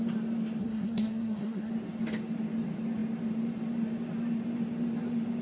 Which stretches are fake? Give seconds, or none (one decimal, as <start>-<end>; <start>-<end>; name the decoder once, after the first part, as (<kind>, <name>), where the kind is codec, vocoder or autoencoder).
0.6-1.7 (codec, SNAC)